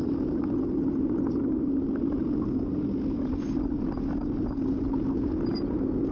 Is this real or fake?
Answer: real